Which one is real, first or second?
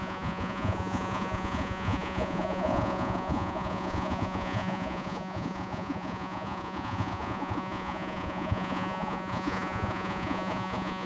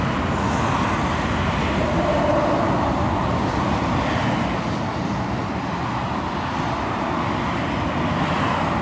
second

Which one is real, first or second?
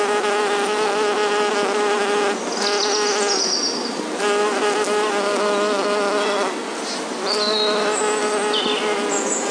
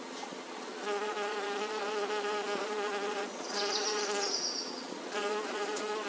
first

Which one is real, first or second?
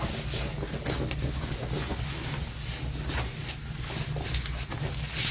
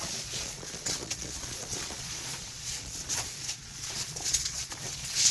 first